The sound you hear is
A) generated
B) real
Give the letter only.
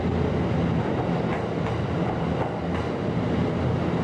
B